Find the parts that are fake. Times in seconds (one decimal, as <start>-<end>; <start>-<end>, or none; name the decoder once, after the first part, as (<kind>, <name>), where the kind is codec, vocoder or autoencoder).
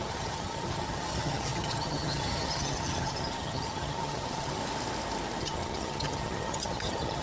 0.0-4.6 (vocoder, HiFi-GAN); 5.4-7.2